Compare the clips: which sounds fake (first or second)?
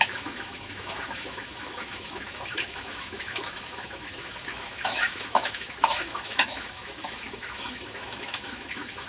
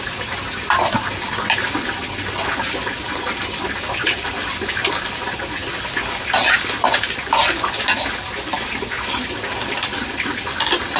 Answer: first